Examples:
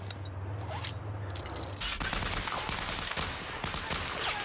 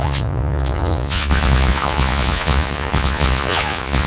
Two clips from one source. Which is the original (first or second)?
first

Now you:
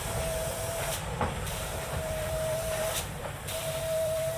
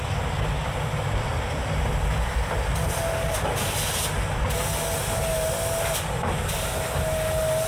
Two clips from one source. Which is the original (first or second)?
second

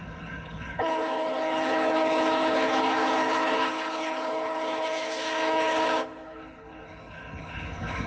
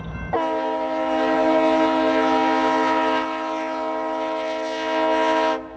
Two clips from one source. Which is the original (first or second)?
second